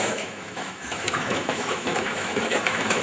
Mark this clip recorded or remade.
remade